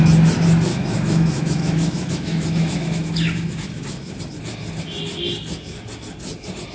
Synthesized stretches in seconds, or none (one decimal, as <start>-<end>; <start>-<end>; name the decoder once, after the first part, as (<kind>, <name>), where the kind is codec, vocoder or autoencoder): 0.7-4.2 (autoencoder, DAC-VAE)